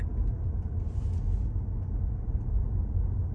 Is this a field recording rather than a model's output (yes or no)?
yes